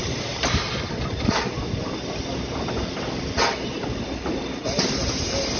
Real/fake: real